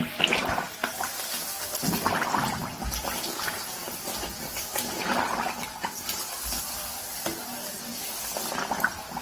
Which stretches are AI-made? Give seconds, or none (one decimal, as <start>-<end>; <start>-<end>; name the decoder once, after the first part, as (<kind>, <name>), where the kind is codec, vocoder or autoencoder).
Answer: none